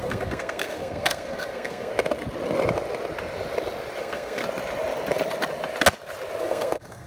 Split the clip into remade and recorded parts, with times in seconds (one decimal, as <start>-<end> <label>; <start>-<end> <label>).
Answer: 0.0-1.9 remade; 1.9-4.0 recorded; 4.0-4.4 remade; 4.4-6.4 recorded; 6.4-7.1 remade